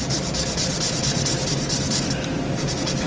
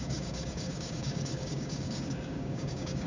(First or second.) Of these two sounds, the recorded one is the first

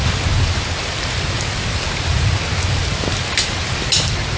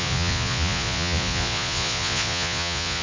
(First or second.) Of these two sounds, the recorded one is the first